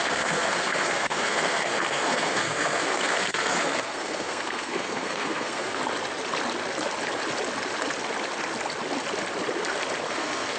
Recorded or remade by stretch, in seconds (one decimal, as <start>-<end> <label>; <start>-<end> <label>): 0.0-5.8 remade; 5.8-10.1 recorded; 10.1-10.6 remade